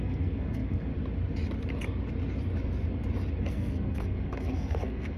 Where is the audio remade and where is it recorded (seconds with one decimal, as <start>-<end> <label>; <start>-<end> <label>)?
0.0-0.9 remade; 0.9-3.4 recorded; 3.4-5.2 remade